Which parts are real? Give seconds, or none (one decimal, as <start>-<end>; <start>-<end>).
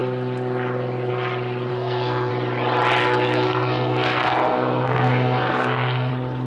0.0-1.7; 2.3-3.0; 6.1-6.5